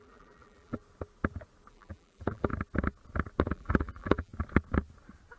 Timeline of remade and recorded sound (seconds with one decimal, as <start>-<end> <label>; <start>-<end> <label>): 0.0-0.8 remade; 0.8-1.7 recorded; 1.7-2.5 remade; 2.5-3.4 recorded; 3.4-4.3 remade; 4.3-5.4 recorded